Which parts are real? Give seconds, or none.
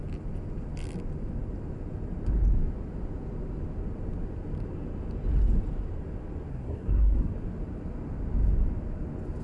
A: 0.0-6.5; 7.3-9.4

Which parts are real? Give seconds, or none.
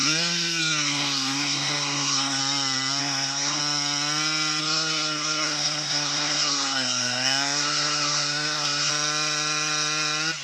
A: 2.4-3.0; 3.6-4.6; 8.9-10.4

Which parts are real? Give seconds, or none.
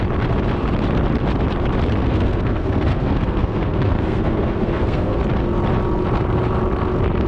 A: 0.0-2.0; 5.2-7.3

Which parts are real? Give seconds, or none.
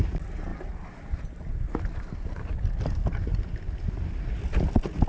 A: 0.0-5.1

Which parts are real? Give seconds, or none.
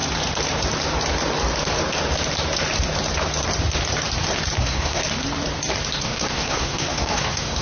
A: 0.0-4.6; 5.0-6.0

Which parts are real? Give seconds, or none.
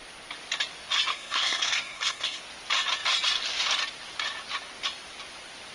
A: 0.0-1.1; 2.4-5.7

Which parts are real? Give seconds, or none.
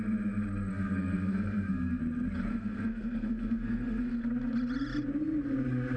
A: 0.0-0.7; 2.0-2.5; 4.2-6.0